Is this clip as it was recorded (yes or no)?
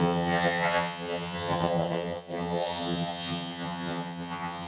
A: no